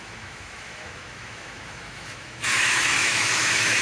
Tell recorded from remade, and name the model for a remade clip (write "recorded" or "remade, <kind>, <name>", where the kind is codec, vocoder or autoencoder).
remade, autoencoder, DAC-VAE